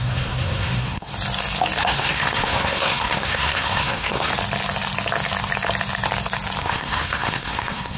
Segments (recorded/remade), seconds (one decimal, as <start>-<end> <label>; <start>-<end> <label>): 0.0-1.1 remade; 1.1-1.8 recorded; 1.8-4.3 remade; 4.3-6.6 recorded; 6.6-8.0 remade